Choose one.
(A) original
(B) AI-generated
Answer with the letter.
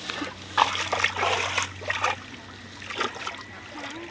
A